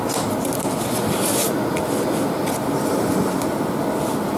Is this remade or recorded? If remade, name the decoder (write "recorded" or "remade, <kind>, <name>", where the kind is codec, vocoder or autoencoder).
recorded